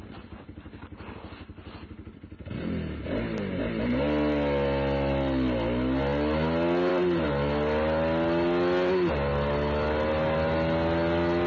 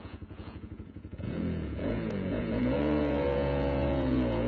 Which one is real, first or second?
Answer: first